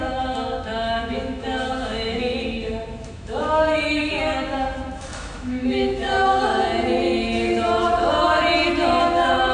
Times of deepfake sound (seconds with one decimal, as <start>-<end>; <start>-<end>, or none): 0.0-6.5; 9.0-9.5